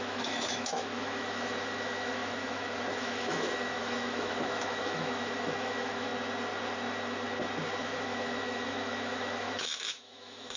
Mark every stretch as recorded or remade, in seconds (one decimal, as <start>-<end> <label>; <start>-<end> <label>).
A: 0.0-6.1 remade; 6.1-7.8 recorded; 7.8-10.6 remade